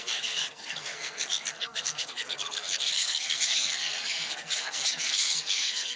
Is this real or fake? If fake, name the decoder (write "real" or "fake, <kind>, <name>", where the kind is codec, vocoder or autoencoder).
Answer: fake, codec, SNAC